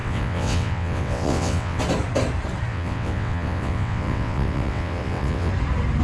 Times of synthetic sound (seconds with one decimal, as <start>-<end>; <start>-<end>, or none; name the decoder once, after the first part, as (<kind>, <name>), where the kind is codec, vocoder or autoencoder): 0.0-1.8 (vocoder, WaveNeXt); 2.7-5.5